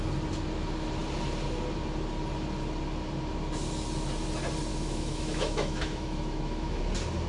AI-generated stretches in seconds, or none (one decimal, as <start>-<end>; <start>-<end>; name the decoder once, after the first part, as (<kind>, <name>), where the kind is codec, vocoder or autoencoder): 4.7-6.8 (autoencoder, DAC-VAE)